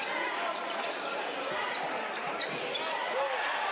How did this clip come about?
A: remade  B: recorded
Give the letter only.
B